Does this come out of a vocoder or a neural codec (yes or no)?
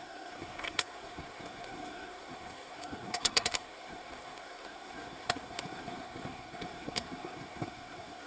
yes